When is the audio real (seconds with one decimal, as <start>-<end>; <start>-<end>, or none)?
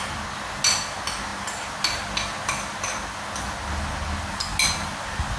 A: 0.0-5.4